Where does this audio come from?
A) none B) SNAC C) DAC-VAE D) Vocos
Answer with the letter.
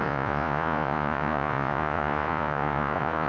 D